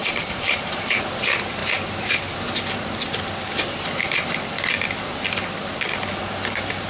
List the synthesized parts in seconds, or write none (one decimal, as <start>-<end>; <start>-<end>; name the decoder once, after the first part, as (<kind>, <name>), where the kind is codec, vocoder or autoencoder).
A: 0.0-0.9 (vocoder, BigVGAN v2)